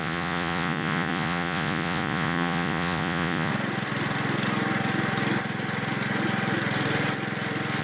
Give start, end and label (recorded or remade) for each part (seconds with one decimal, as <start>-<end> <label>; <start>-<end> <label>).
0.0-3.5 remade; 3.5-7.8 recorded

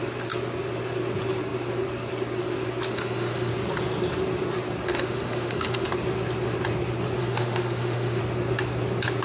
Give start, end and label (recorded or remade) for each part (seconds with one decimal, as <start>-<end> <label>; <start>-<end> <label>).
0.0-2.9 recorded; 2.9-3.5 remade; 3.5-4.9 recorded; 4.9-5.9 remade; 5.9-7.2 recorded; 7.2-8.2 remade; 8.2-9.2 recorded

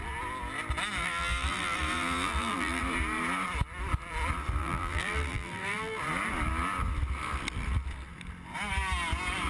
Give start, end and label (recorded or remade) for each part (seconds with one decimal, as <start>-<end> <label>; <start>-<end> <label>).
0.0-1.0 recorded; 1.0-2.8 remade; 2.8-4.6 recorded; 4.6-6.0 remade; 6.0-9.5 recorded

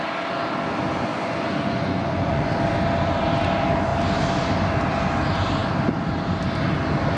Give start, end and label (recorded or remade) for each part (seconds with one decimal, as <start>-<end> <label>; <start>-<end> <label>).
0.0-1.1 recorded; 1.1-2.5 remade; 2.5-7.2 recorded

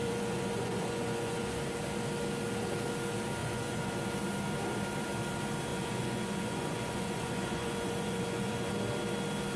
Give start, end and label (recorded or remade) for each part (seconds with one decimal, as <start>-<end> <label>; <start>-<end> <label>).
0.0-1.7 remade; 1.7-3.4 recorded; 3.4-3.9 remade; 3.9-5.7 recorded; 5.7-8.7 remade; 8.7-9.6 recorded

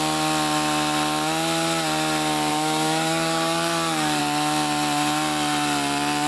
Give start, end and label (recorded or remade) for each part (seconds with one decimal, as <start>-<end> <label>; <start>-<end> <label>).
0.0-2.5 recorded; 2.5-4.2 remade; 4.2-6.3 recorded

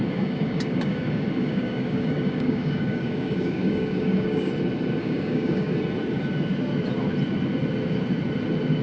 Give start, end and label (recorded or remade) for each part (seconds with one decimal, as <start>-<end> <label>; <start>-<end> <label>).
0.0-4.5 remade; 4.5-5.0 recorded; 5.0-5.7 remade; 5.7-8.8 recorded